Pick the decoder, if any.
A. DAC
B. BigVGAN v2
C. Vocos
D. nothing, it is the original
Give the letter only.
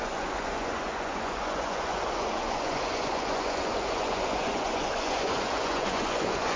C